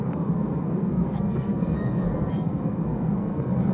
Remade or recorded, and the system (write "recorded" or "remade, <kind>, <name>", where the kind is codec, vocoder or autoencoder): remade, codec, SNAC